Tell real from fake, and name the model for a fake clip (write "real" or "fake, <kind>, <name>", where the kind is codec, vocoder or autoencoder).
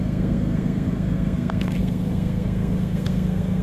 fake, codec, SNAC